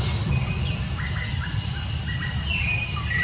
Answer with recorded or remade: recorded